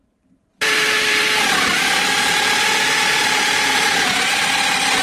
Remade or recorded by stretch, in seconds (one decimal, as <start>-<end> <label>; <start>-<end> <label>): 0.0-0.5 recorded; 0.5-2.1 remade; 2.1-5.0 recorded